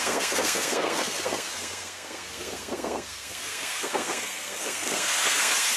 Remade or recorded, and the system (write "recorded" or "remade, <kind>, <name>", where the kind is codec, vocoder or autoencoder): remade, codec, SNAC